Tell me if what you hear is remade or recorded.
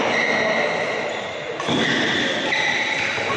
recorded